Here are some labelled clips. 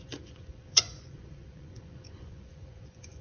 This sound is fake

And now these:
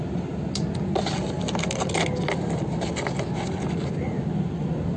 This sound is real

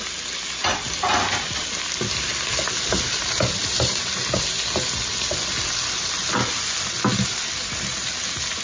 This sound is real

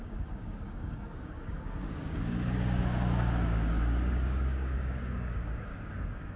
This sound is fake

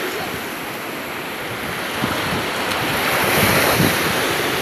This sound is real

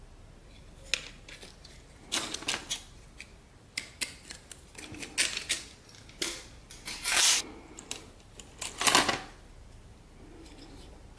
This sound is real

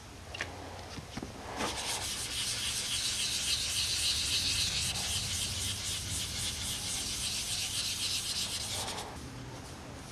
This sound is real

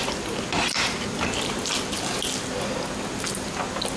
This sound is real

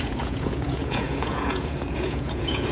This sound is fake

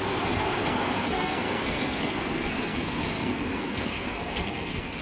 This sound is fake